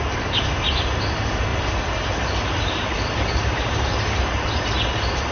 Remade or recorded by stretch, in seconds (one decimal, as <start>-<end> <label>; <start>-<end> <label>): 0.0-1.5 recorded; 1.5-4.6 remade; 4.6-5.3 recorded